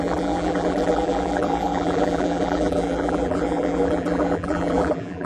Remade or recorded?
remade